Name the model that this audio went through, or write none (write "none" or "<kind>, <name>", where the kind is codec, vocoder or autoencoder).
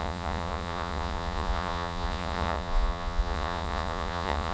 vocoder, Vocos